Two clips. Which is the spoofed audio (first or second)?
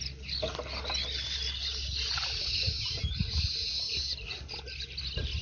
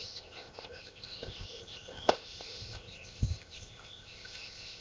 second